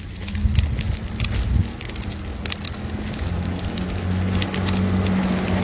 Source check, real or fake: real